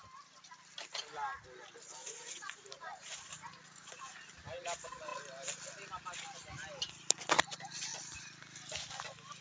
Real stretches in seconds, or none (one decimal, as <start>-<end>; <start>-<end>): 0.0-2.0; 4.3-9.4